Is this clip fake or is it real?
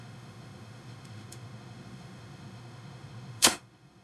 fake